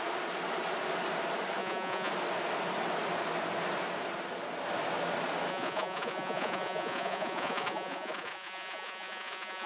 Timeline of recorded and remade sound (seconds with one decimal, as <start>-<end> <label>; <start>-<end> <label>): 0.0-1.6 recorded; 1.6-2.1 remade; 2.1-5.5 recorded; 5.5-9.7 remade